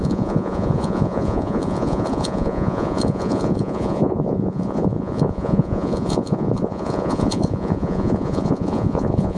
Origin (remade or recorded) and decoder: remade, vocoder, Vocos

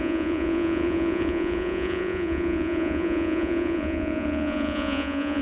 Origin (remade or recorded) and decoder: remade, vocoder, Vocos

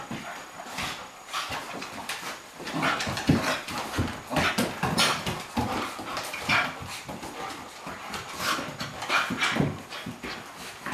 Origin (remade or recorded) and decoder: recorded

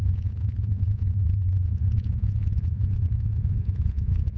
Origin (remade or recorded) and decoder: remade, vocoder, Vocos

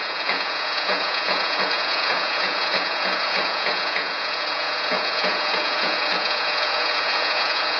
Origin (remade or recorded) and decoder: remade, vocoder, Vocos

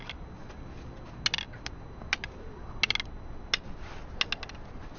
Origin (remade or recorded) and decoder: recorded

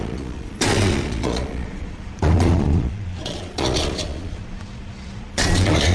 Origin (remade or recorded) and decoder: remade, vocoder, Vocos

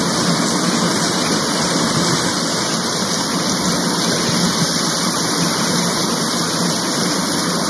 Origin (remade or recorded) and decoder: recorded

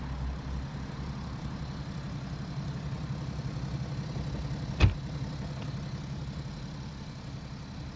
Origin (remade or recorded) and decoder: recorded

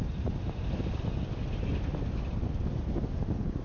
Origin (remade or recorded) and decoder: recorded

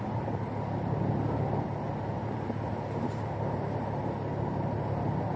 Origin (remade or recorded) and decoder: recorded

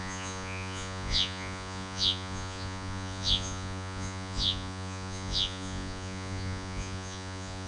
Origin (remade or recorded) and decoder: remade, vocoder, Vocos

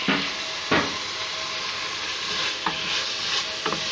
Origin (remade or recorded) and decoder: recorded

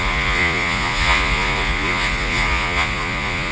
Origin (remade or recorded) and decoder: remade, vocoder, Vocos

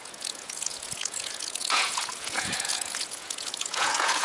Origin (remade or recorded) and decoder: remade, vocoder, Vocos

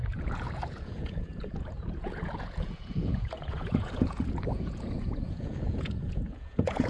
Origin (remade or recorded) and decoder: remade, vocoder, Vocos